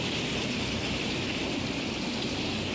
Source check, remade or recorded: recorded